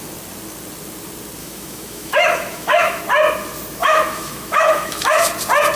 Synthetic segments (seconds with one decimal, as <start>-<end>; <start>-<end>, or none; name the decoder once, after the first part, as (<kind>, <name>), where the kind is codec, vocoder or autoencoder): 1.4-3.0 (autoencoder, DAC-VAE); 3.8-5.3